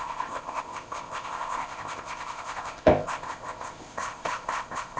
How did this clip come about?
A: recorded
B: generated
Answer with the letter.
B